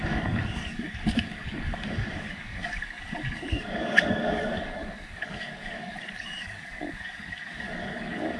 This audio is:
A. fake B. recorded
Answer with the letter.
A